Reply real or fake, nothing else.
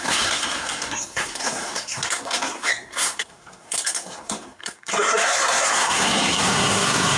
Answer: fake